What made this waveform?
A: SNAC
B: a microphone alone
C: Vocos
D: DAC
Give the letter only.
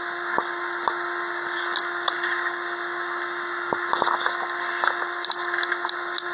B